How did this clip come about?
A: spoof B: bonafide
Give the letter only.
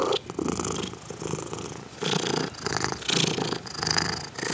B